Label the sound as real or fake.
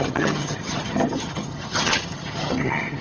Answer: fake